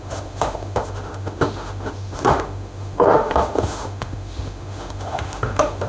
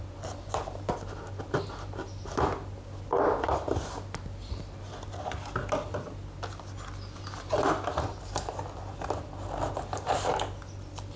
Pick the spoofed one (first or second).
first